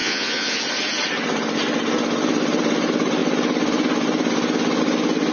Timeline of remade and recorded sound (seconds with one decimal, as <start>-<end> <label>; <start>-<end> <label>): 0.0-0.6 remade; 0.6-5.3 recorded